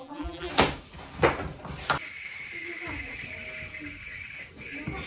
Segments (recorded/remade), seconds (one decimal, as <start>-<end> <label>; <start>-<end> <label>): 0.0-0.5 remade; 0.5-5.1 recorded